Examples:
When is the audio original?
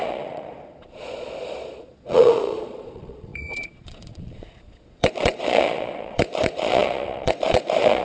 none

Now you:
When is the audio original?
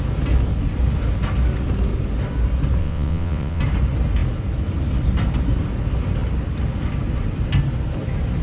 0.0-2.8; 3.6-8.4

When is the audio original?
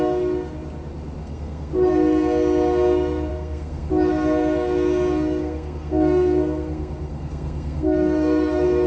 0.0-1.2; 1.7-3.3; 3.9-5.4